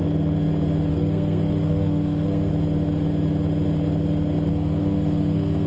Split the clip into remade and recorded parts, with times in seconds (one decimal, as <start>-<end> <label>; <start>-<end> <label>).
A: 0.0-0.9 recorded; 0.9-2.5 remade; 2.5-4.5 recorded; 4.5-5.7 remade